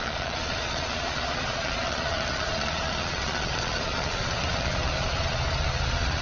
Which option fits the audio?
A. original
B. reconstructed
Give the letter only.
B